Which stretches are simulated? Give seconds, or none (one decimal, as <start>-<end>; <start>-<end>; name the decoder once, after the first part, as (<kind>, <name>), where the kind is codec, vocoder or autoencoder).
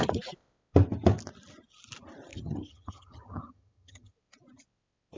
2.3-4.1 (vocoder, HiFi-GAN)